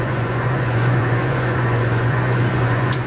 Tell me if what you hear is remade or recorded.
remade